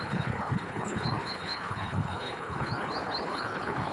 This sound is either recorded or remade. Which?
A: remade